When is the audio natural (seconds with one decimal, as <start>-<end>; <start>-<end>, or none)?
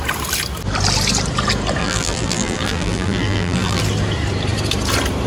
0.0-1.8; 3.8-5.3